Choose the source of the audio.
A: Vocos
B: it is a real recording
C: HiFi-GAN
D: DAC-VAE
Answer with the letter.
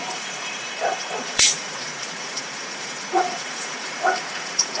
A